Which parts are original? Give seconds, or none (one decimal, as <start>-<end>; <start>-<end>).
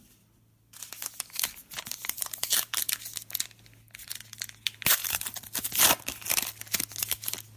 0.0-1.6; 2.8-5.0; 5.7-7.6